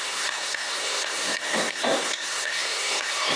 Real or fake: fake